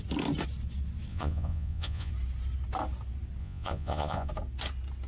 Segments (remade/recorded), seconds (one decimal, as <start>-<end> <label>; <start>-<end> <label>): 0.0-1.1 recorded; 1.1-2.1 remade; 2.1-3.4 recorded; 3.4-4.3 remade; 4.3-5.1 recorded